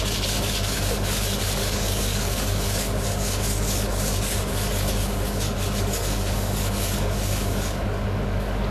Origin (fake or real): fake